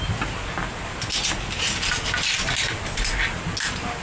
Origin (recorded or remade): recorded